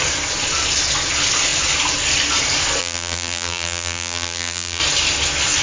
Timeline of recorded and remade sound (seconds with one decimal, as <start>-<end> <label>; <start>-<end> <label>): 0.0-2.8 recorded; 2.8-4.8 remade; 4.8-5.6 recorded

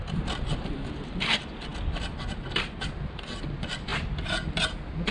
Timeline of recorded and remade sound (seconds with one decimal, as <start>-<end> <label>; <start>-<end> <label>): 0.0-5.1 recorded

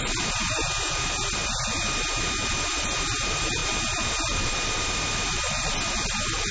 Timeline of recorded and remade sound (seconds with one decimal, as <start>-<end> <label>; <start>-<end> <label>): 0.0-1.4 remade; 1.4-2.5 recorded; 2.5-3.6 remade; 3.6-4.1 recorded; 4.1-6.5 remade

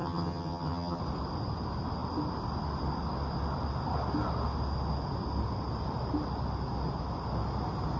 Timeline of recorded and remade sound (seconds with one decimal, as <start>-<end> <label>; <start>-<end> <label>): 0.0-1.0 remade; 1.0-8.0 recorded

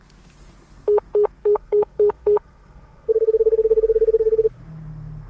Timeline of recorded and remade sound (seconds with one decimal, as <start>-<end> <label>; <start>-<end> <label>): 0.0-1.4 recorded; 1.4-4.6 remade; 4.6-5.3 recorded